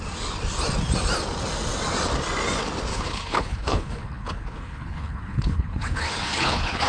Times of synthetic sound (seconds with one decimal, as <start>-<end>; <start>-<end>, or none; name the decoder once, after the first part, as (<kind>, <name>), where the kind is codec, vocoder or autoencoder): 2.9-6.9 (codec, HILCodec)